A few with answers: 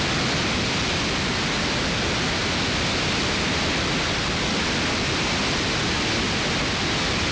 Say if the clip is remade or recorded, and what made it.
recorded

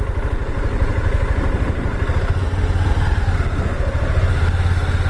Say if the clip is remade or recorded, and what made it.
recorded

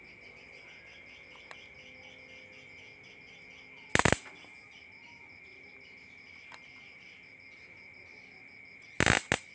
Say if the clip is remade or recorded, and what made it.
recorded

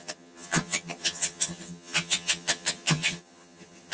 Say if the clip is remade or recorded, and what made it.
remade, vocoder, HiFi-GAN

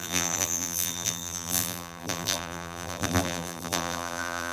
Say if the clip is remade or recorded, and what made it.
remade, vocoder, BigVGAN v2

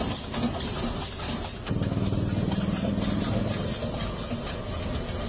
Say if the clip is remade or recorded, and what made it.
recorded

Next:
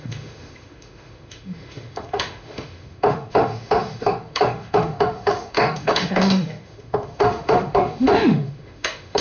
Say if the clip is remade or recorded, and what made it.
remade, autoencoder, DAC-VAE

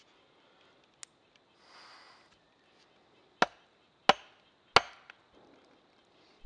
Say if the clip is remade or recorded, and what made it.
recorded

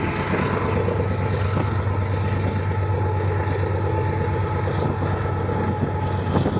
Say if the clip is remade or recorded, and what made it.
recorded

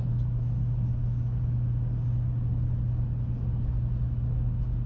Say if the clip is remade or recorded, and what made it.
recorded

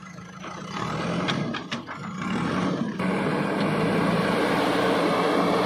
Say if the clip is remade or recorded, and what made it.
remade, vocoder, BigVGAN v2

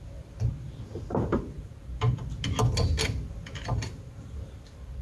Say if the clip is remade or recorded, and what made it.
recorded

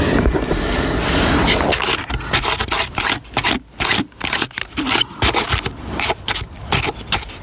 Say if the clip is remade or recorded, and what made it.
recorded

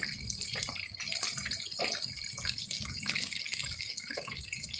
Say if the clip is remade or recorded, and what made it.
remade, vocoder, BigVGAN v2